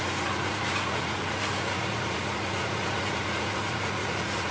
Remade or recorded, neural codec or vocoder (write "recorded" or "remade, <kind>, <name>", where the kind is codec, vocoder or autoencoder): remade, vocoder, Vocos